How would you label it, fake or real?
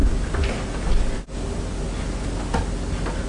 real